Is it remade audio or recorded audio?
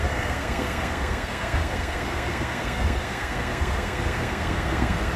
remade